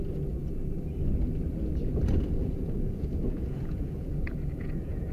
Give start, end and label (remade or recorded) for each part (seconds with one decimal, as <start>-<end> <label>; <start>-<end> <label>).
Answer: 0.0-2.4 recorded; 2.4-5.1 remade